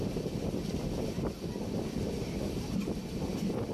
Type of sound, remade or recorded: recorded